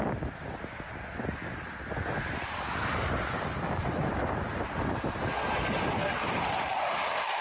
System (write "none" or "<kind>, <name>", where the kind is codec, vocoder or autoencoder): none